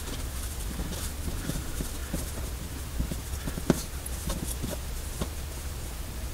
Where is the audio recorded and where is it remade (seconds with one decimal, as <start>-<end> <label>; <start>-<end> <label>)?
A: 0.0-2.0 remade; 2.0-5.8 recorded; 5.8-6.3 remade